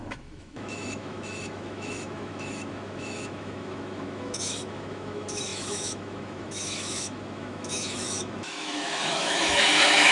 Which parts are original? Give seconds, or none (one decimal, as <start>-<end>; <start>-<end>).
none